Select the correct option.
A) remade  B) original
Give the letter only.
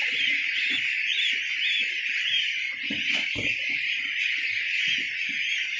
B